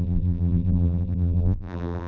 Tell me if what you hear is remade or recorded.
remade